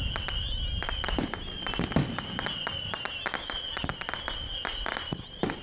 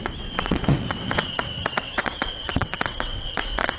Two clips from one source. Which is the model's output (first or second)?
second